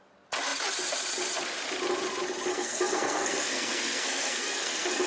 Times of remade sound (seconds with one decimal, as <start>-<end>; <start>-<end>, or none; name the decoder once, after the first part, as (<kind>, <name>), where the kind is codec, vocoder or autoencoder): 2.5-5.1 (codec, SNAC)